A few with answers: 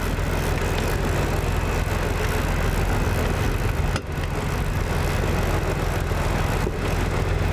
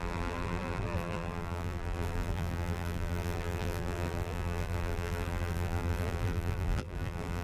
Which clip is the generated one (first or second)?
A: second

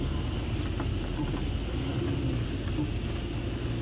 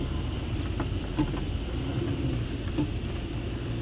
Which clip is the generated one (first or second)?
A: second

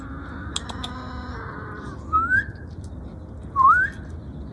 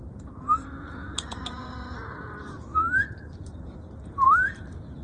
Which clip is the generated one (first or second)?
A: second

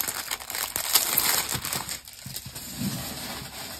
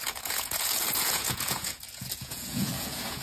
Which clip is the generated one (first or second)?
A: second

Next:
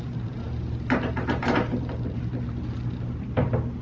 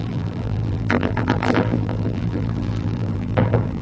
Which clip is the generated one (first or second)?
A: second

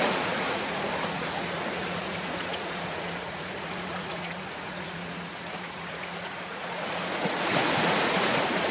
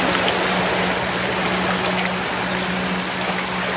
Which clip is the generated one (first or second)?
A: first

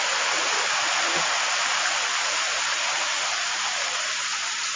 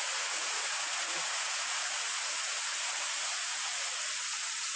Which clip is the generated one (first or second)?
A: second